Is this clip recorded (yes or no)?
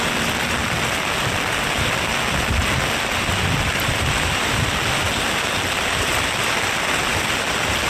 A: yes